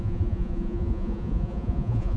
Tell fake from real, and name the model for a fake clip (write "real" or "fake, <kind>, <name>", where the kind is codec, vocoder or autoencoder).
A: fake, vocoder, Vocos